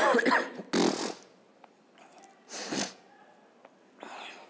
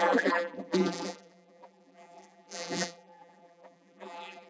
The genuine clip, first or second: first